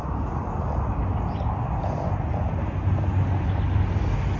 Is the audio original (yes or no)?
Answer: yes